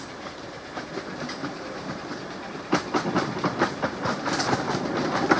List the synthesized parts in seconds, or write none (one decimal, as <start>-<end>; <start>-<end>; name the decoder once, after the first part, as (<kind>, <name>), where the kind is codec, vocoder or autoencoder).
1.4-1.9 (vocoder, BigVGAN v2); 2.5-5.0